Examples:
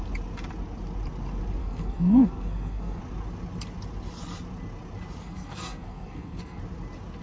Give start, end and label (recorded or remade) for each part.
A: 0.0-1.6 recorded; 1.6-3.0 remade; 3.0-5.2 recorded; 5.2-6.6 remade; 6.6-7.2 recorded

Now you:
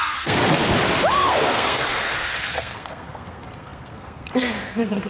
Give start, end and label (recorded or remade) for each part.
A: 0.0-0.4 remade; 0.4-1.1 recorded; 1.1-5.1 remade

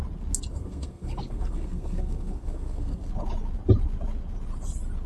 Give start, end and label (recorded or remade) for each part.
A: 0.0-0.5 recorded; 0.5-3.1 remade; 3.1-5.1 recorded

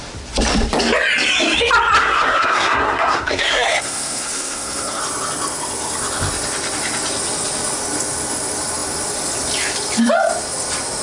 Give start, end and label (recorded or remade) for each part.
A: 0.0-2.0 recorded; 2.0-5.0 remade; 5.0-11.0 recorded

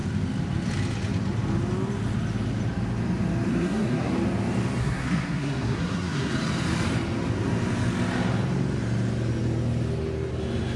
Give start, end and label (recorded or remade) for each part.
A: 0.0-3.5 recorded; 3.5-4.1 remade; 4.1-4.8 recorded; 4.8-6.3 remade; 6.3-10.8 recorded